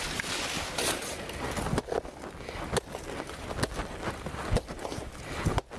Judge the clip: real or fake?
real